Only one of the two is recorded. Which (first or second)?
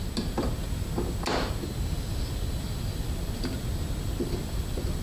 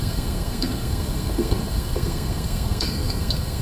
first